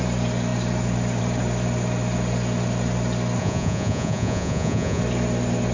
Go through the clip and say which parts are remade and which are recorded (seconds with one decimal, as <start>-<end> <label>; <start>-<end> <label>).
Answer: 0.0-3.4 recorded; 3.4-5.0 remade; 5.0-5.7 recorded